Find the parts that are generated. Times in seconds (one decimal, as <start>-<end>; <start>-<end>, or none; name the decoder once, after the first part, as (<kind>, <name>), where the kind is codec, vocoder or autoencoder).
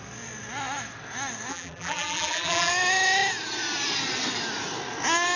1.5-2.7 (vocoder, BigVGAN v2)